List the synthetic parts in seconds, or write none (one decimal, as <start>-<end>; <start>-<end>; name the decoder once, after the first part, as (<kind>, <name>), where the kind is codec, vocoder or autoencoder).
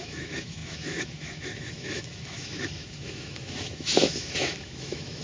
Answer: 0.0-5.2 (autoencoder, DAC-VAE)